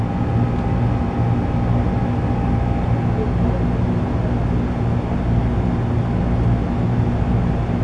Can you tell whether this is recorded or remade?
recorded